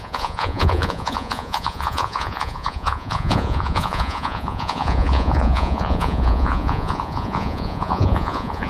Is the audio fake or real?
fake